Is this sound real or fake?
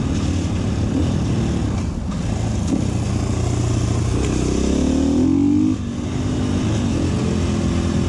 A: real